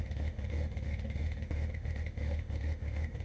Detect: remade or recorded remade